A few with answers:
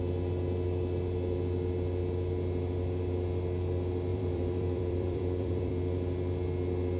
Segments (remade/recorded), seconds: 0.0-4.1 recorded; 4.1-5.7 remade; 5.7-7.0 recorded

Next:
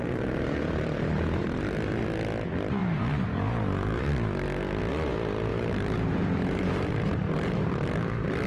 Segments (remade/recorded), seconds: 0.0-2.8 recorded; 2.8-4.8 remade; 4.8-5.5 recorded; 5.5-7.7 remade; 7.7-8.5 recorded